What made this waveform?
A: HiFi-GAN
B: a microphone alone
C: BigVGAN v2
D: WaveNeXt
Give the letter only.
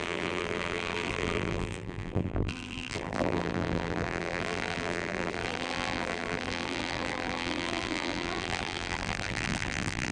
C